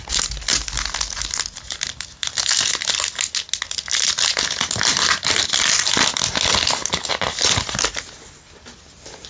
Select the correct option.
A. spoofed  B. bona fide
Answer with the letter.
B